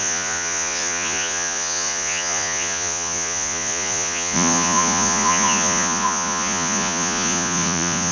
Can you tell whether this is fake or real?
fake